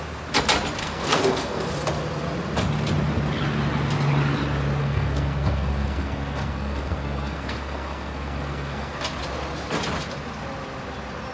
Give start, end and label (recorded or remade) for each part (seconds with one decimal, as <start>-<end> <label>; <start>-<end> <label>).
0.0-0.8 recorded; 0.8-1.7 remade; 1.7-4.8 recorded; 4.8-9.0 remade; 9.0-11.3 recorded